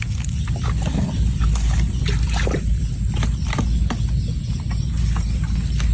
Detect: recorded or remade recorded